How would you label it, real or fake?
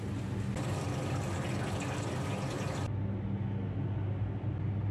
real